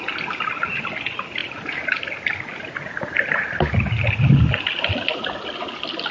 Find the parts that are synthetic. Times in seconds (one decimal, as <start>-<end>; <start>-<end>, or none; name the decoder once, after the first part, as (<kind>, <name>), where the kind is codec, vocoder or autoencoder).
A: none